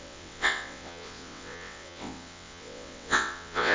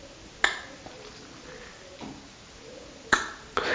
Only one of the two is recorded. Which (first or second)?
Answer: second